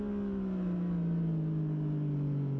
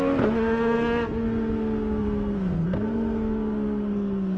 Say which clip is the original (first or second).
first